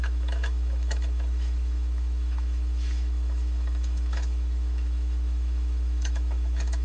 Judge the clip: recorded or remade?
remade